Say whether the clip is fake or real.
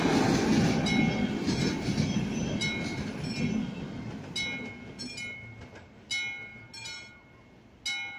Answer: real